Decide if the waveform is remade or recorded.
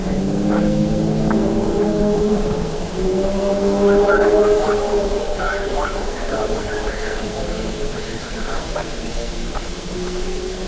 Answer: remade